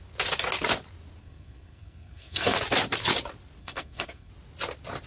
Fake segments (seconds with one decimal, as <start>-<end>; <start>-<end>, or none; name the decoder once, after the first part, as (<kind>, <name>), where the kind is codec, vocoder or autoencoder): 1.2-2.6 (codec, SNAC); 3.6-4.3